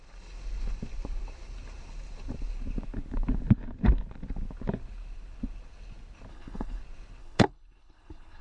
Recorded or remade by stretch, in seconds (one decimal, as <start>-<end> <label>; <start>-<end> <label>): 0.0-6.3 recorded; 6.3-6.8 remade; 6.8-7.2 recorded; 7.2-8.4 remade